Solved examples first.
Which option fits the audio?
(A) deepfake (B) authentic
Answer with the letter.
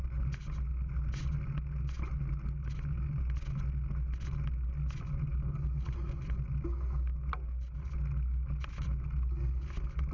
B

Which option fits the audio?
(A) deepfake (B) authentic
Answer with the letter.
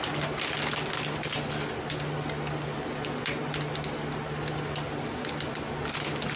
B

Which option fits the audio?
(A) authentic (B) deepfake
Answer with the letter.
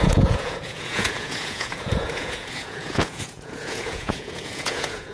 B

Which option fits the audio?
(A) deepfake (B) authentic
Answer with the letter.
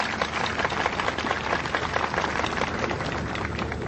B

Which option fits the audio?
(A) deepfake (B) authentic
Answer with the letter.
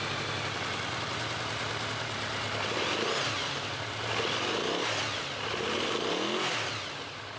B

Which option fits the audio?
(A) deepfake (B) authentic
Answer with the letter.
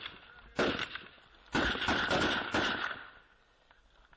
B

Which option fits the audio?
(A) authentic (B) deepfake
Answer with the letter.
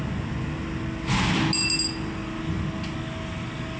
A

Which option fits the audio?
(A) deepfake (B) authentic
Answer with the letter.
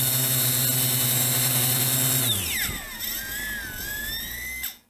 B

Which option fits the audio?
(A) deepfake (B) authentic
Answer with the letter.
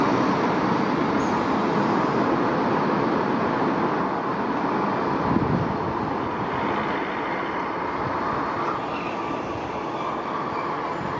B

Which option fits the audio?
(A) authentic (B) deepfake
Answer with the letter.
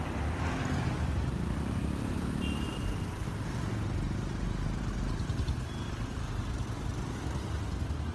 A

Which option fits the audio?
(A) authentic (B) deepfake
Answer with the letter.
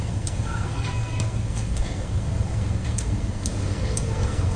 B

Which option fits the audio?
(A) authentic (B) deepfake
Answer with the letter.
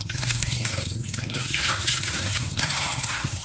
B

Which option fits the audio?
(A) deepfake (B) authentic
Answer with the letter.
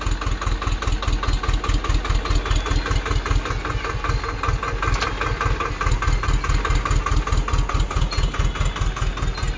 B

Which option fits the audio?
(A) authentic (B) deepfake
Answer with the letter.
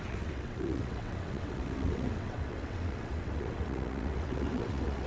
B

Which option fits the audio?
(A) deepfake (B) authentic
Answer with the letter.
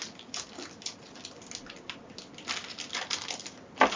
B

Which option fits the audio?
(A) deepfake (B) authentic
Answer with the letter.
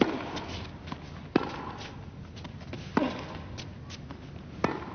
B